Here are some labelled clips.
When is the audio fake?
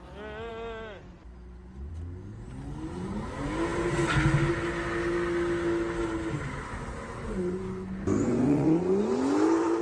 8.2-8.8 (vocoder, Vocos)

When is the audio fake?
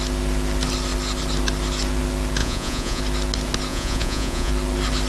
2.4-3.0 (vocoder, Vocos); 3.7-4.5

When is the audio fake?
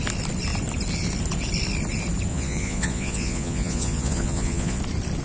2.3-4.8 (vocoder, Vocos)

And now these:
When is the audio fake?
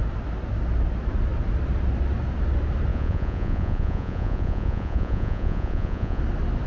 2.9-6.2 (vocoder, Vocos)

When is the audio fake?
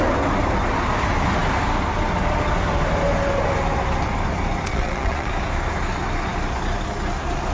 4.7-5.3 (vocoder, Vocos)